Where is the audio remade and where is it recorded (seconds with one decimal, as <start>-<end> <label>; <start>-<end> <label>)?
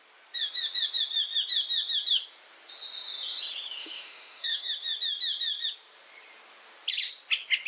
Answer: 0.0-3.8 recorded; 3.8-4.7 remade; 4.7-7.7 recorded